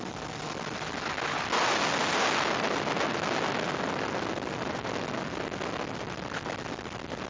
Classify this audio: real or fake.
real